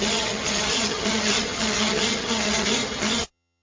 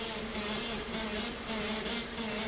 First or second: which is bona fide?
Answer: second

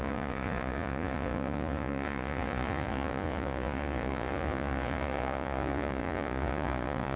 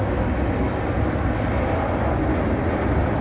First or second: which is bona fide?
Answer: second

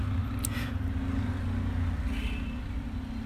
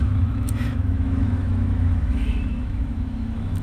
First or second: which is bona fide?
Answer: first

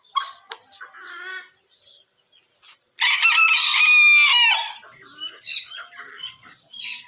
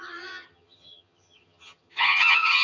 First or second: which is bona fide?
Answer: first